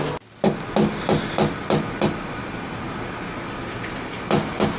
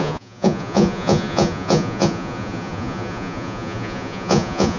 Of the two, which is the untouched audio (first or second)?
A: first